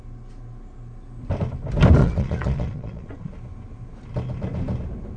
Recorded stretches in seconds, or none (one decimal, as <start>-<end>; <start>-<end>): 0.0-2.0; 3.3-5.2